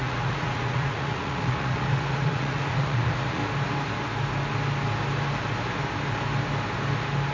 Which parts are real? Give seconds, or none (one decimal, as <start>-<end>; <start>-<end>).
3.4-7.3